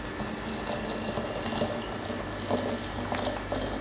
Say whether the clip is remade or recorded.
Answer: recorded